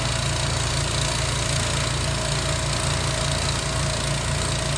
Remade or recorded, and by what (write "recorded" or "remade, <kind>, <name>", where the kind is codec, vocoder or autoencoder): recorded